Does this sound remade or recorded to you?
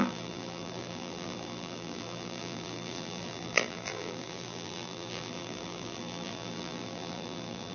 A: remade